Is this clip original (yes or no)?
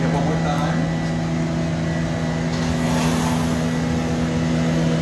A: yes